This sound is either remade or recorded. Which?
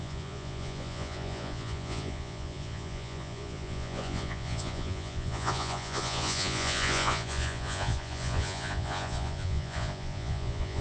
remade